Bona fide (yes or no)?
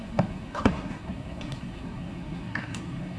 no